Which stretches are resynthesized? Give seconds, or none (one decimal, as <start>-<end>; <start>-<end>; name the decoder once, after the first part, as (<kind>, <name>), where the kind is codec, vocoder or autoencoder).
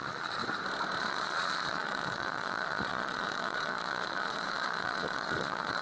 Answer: 0.0-0.4 (vocoder, Vocos); 1.0-5.8